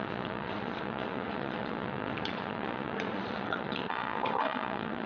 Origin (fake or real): fake